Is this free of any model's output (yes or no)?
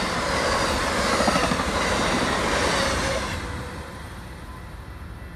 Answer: yes